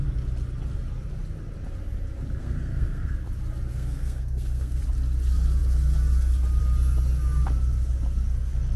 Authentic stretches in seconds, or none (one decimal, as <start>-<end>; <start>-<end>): 0.0-2.4; 3.2-3.7; 4.8-8.8